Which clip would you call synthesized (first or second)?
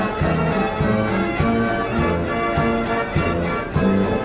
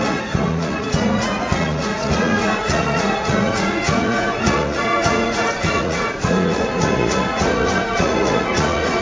second